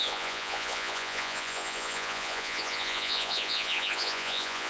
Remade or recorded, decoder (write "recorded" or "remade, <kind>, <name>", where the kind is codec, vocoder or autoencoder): remade, vocoder, Vocos